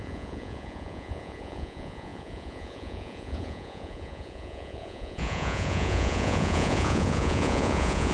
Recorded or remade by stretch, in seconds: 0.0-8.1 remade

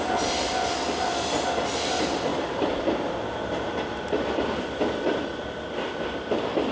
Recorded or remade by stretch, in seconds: 0.0-6.7 recorded